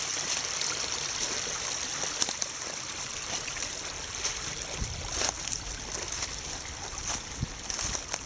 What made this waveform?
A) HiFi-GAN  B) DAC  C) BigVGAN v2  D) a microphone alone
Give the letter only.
D